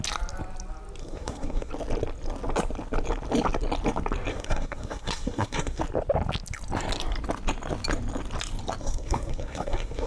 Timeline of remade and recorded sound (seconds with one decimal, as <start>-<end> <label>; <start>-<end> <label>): 0.0-1.0 recorded; 1.0-1.7 remade; 1.7-4.3 recorded; 4.3-5.8 remade; 5.8-8.8 recorded; 8.8-10.1 remade